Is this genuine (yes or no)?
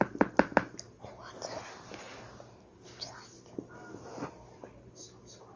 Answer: yes